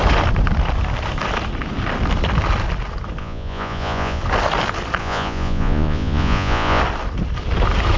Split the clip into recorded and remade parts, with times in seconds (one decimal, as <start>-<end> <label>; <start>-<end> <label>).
0.0-3.2 recorded; 3.2-4.2 remade; 4.2-5.0 recorded; 5.0-6.8 remade; 6.8-8.0 recorded